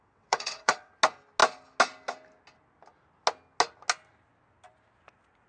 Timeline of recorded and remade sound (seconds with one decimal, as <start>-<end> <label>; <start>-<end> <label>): 0.0-0.9 remade; 0.9-5.5 recorded